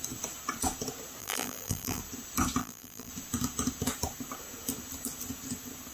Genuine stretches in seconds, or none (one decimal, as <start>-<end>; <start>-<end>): 0.0-1.2; 2.0-2.6; 3.1-5.9

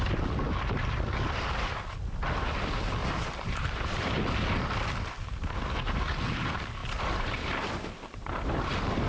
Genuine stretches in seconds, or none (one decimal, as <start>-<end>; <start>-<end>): 0.0-3.0; 4.2-6.8; 8.7-9.1